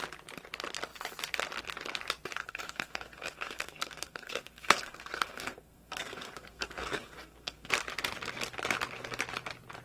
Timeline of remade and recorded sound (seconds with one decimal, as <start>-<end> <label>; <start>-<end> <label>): 0.0-2.4 recorded; 2.4-7.7 remade; 7.7-9.8 recorded